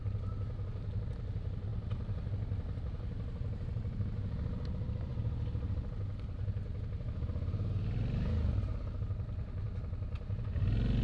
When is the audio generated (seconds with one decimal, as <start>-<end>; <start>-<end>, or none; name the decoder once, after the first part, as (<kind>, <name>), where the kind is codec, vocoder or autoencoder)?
5.1-5.7 (vocoder, BigVGAN v2)